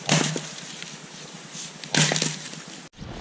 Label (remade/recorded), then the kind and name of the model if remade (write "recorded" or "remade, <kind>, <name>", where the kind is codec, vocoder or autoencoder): recorded